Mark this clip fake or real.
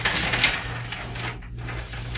real